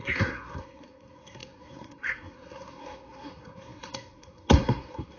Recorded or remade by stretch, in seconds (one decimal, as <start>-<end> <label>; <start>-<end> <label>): 0.0-5.2 remade